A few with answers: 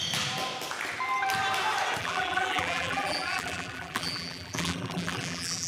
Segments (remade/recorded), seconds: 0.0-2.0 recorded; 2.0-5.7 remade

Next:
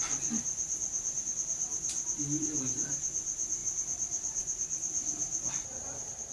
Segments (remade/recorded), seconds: 0.0-6.3 remade

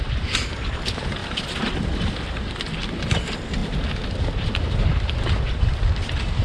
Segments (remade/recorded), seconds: 0.0-1.2 remade; 1.2-3.0 recorded; 3.0-6.4 remade

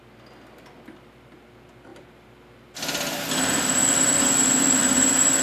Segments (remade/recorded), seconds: 0.0-5.4 recorded

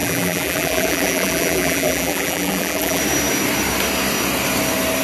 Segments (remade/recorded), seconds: 0.0-3.0 remade; 3.0-5.0 recorded

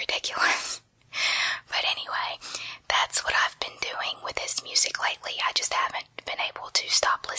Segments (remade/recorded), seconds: 0.0-4.5 recorded; 4.5-5.4 remade; 5.4-7.4 recorded